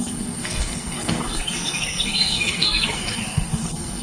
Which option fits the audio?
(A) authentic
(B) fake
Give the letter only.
B